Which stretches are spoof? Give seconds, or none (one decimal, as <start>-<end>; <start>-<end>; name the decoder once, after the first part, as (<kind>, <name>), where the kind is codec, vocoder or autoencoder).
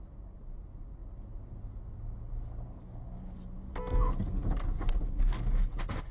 none